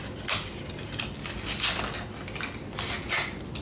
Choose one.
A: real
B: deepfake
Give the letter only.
A